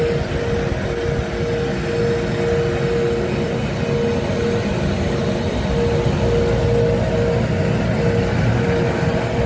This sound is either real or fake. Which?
real